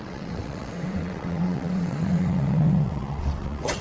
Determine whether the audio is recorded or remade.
remade